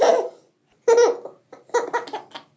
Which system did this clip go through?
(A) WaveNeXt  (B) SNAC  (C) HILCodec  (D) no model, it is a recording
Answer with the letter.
D